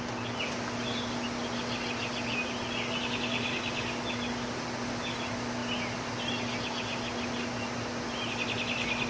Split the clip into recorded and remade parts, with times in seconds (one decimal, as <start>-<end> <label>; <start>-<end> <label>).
0.0-9.1 recorded